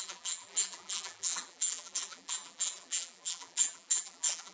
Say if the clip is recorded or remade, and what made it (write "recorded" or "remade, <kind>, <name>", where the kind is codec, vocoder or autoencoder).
remade, vocoder, BigVGAN v2